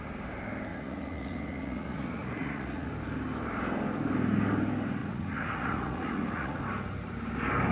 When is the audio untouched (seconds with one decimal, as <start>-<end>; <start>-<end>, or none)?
0.0-0.7; 2.9-5.0; 6.6-7.7